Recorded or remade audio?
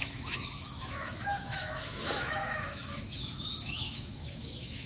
remade